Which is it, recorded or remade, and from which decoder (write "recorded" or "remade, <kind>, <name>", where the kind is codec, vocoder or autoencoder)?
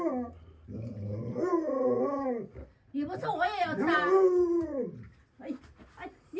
recorded